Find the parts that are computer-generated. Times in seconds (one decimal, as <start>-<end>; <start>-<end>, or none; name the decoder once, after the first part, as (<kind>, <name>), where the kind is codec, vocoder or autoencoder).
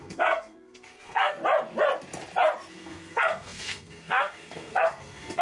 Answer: 0.0-1.4 (codec, SNAC); 2.7-5.4